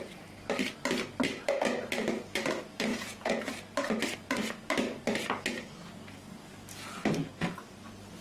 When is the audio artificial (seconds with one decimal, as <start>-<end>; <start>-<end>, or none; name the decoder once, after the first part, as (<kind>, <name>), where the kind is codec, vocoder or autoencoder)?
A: 2.9-3.4 (vocoder, Vocos)